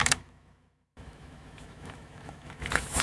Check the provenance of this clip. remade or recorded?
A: remade